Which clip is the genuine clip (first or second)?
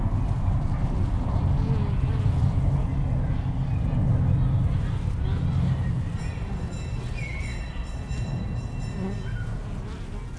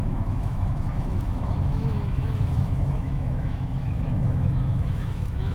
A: first